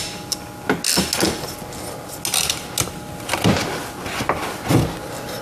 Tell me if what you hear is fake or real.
real